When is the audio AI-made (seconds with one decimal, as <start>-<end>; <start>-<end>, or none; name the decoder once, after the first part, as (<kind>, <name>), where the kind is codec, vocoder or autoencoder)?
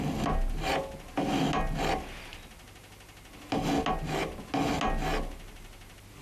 none